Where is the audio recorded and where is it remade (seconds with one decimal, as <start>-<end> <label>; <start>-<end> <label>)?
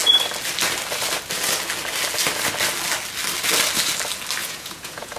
0.0-4.4 recorded; 4.4-5.2 remade